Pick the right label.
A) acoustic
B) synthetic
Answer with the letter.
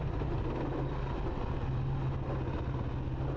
A